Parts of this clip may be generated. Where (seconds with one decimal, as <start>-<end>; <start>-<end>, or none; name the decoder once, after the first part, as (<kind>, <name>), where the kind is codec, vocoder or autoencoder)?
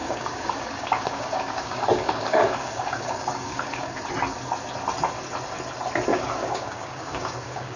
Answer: 0.0-4.0 (codec, DAC); 6.1-7.8